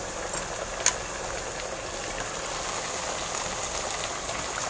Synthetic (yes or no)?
no